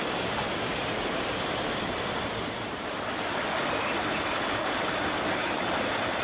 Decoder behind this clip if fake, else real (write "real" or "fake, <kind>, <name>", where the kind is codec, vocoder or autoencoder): real